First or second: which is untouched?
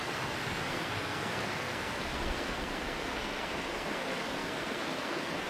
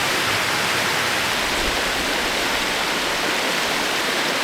second